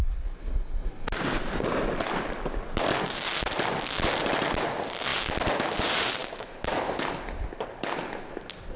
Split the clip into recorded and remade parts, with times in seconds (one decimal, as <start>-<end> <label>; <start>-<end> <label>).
0.0-6.2 recorded; 6.2-6.8 remade; 6.8-8.8 recorded